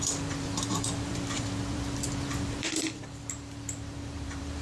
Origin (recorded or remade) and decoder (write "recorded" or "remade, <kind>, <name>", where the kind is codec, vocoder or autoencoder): remade, vocoder, BigVGAN v2